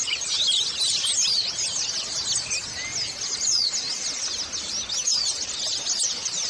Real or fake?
real